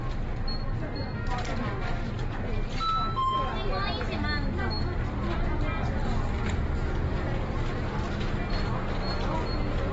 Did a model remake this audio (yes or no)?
no